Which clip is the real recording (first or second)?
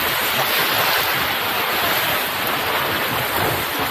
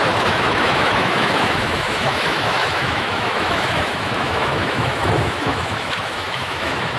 first